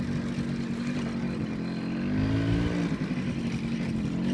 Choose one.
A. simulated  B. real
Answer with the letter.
B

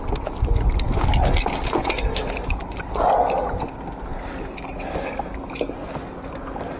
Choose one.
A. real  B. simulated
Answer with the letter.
A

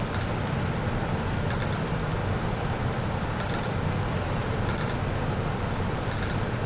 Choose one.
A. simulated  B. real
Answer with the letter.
B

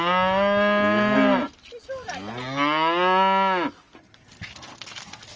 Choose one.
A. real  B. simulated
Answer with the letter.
A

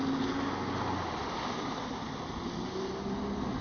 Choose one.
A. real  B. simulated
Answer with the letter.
A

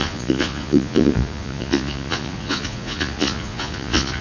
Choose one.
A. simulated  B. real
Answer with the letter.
A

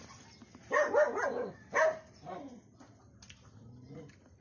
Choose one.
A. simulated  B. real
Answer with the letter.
B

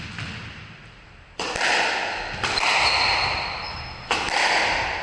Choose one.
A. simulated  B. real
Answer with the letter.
B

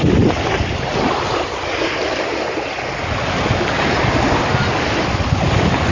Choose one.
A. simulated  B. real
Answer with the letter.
B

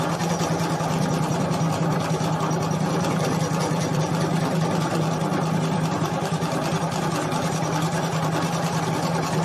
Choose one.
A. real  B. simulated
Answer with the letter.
A